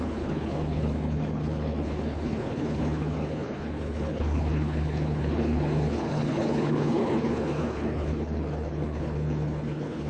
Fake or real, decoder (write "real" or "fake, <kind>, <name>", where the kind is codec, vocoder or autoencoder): fake, codec, HILCodec